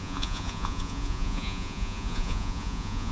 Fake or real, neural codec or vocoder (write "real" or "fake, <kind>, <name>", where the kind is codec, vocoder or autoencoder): fake, vocoder, Vocos